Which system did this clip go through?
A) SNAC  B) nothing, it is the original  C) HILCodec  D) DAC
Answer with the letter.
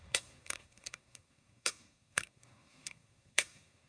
A